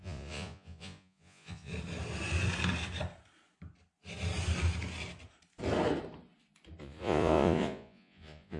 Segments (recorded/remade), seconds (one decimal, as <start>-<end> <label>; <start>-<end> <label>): 0.0-1.7 remade; 1.7-6.8 recorded; 6.8-8.6 remade